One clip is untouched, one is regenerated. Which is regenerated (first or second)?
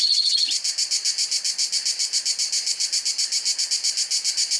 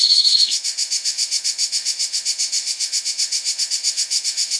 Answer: second